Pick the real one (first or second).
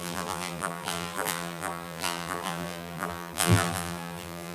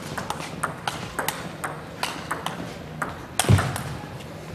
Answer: second